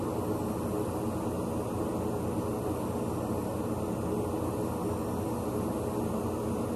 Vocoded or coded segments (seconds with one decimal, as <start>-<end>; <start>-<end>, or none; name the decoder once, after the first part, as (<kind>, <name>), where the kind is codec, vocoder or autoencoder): none